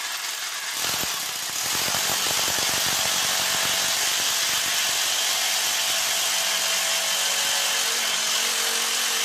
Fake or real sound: real